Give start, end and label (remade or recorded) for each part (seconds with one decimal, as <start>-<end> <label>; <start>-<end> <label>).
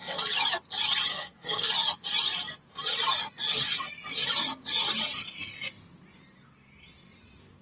0.0-1.1 recorded; 1.1-1.7 remade; 1.7-7.6 recorded